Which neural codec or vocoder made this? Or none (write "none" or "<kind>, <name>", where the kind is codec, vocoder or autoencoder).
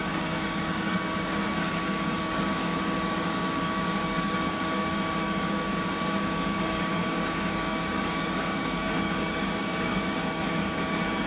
codec, DAC